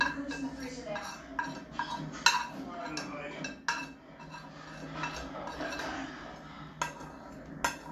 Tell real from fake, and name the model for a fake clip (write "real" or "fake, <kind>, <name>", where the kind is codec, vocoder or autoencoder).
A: real